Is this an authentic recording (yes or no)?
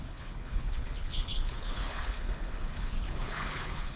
no